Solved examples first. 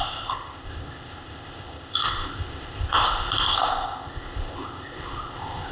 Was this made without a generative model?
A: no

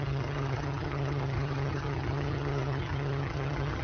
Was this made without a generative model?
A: no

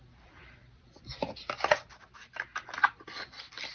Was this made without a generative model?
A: yes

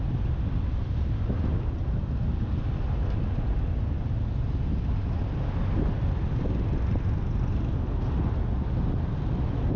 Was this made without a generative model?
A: yes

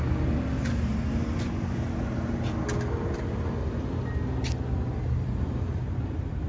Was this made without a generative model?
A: yes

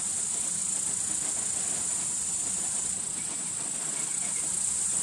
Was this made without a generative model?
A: yes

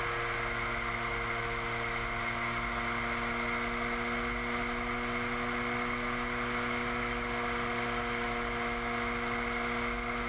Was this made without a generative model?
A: yes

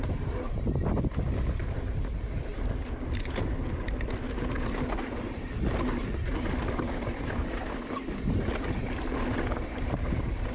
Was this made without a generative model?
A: yes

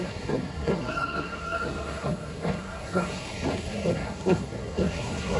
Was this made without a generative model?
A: no